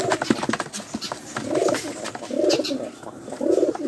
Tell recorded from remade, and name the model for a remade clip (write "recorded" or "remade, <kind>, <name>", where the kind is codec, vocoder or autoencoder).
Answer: recorded